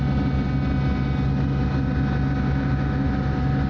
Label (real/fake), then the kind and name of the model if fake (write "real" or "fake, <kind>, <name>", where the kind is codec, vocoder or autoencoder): real